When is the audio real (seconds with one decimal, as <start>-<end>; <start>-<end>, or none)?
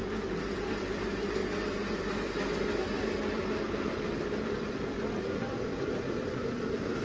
0.0-7.0